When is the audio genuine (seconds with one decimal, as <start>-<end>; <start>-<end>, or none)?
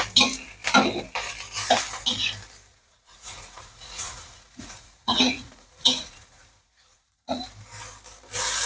0.0-2.7; 7.4-8.7